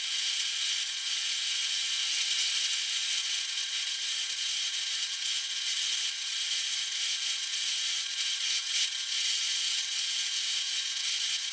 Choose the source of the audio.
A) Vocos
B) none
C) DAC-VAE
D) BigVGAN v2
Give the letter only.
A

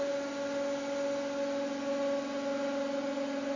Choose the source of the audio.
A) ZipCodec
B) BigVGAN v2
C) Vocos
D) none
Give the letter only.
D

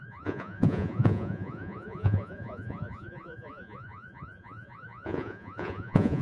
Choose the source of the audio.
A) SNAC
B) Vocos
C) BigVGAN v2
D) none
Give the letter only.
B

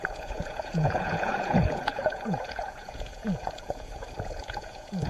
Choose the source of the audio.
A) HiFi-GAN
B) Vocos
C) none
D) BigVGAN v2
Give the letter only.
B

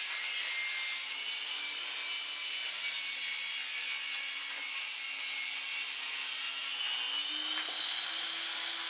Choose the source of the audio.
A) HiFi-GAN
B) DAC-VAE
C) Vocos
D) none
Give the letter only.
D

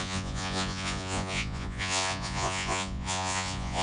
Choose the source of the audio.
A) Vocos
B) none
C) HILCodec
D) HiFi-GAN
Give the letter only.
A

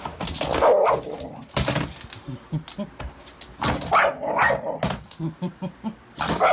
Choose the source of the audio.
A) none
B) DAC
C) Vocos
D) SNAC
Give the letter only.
A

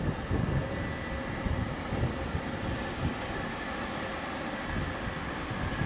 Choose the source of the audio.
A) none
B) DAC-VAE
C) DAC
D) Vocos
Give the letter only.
A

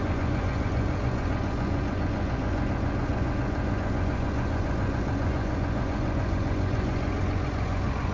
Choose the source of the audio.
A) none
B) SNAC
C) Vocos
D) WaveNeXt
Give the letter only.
C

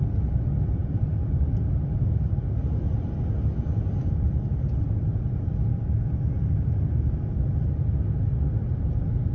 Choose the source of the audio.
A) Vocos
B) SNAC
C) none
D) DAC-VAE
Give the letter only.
C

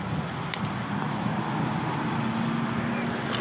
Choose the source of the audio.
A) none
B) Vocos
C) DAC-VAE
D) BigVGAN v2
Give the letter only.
A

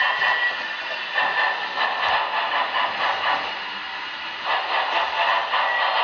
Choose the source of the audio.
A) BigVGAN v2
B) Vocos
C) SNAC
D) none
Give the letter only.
D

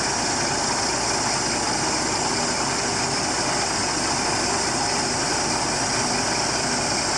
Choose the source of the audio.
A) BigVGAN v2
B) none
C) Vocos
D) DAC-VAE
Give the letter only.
B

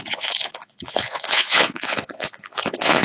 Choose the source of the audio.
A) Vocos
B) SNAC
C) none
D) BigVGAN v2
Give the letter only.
A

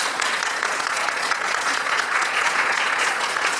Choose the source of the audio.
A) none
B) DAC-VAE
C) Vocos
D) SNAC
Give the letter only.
C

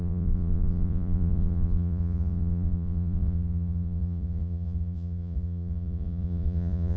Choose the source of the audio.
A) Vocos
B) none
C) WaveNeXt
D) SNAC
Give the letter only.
A